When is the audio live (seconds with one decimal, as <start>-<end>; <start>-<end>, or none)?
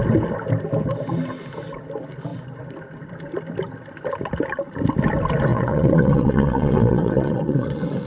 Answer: 0.0-5.5